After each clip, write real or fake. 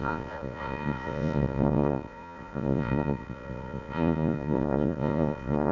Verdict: fake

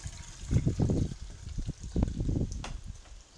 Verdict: real